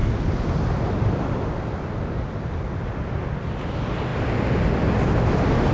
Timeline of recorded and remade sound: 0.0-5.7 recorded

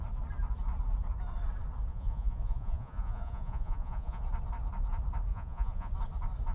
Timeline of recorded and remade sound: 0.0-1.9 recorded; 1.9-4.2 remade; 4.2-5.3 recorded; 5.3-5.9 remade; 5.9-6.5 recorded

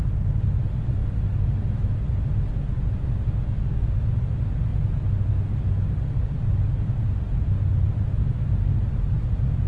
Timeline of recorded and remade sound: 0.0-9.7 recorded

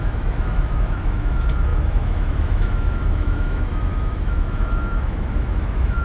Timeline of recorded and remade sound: 0.0-6.0 remade